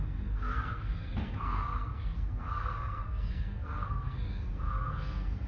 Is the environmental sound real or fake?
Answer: fake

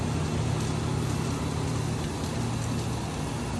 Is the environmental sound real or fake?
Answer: real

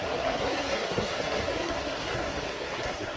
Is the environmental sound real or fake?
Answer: fake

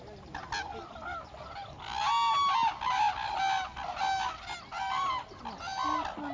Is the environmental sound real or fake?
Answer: real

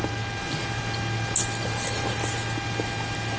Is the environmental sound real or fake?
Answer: real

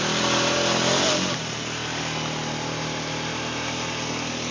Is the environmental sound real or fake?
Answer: real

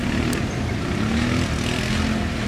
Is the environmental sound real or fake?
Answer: real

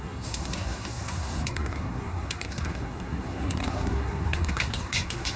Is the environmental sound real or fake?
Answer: fake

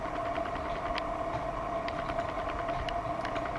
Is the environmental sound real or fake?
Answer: real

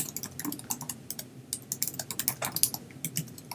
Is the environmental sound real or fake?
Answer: real